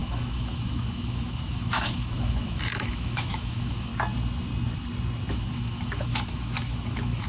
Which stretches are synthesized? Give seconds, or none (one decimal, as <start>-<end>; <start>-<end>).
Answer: 0.0-3.9; 5.3-7.3